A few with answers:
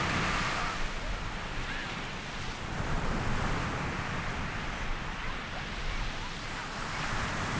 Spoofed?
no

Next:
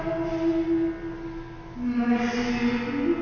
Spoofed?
no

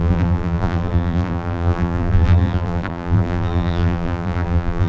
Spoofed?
yes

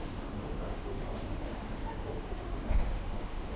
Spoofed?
yes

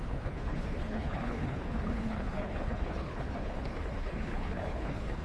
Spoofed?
yes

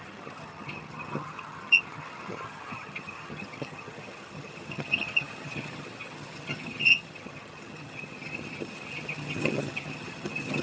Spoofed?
yes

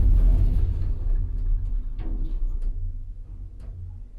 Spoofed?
no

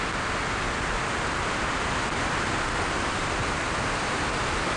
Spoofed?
no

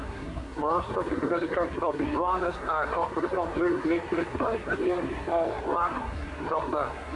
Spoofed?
yes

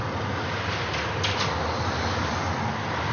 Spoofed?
no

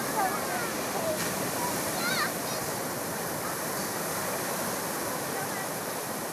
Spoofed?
yes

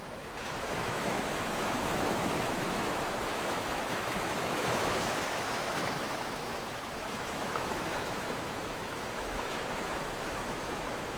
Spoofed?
yes